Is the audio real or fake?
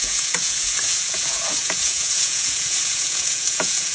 fake